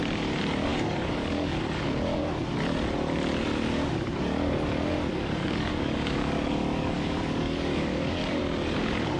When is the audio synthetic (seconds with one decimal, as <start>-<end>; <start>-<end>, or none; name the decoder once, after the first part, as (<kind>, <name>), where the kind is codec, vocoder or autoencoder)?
0.7-1.6 (codec, DAC); 5.1-8.4